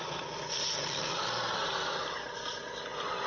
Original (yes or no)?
yes